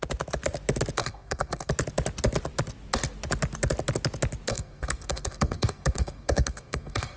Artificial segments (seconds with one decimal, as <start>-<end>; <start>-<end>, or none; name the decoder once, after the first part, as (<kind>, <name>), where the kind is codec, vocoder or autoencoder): 1.0-1.7 (codec, SNAC); 4.5-7.2